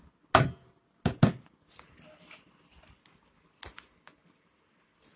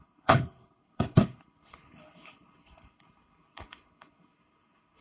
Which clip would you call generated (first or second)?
second